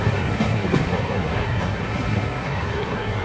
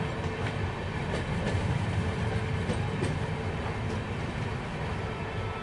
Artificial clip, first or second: first